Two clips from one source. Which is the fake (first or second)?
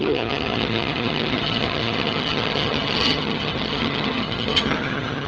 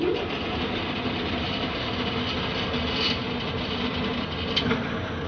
first